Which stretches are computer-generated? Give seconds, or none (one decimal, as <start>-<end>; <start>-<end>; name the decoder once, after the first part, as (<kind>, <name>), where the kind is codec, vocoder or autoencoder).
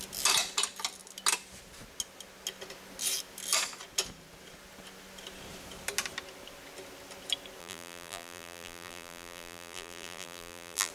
7.6-10.9 (vocoder, BigVGAN v2)